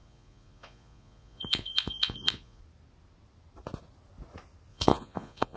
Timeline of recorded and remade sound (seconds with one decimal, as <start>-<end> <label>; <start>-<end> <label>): 0.0-2.6 remade; 2.6-4.7 recorded; 4.7-5.6 remade